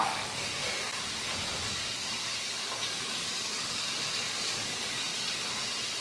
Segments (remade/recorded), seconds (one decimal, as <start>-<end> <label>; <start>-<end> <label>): 0.0-0.6 remade; 0.6-1.7 recorded; 1.7-5.1 remade; 5.1-6.0 recorded